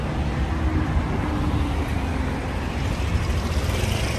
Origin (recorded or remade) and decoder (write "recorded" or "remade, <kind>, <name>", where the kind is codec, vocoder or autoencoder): recorded